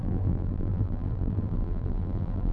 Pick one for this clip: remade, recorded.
remade